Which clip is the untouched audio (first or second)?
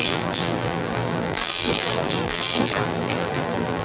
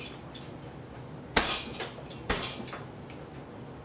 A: second